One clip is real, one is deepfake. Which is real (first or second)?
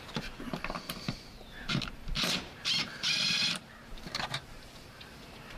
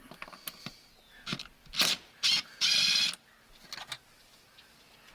second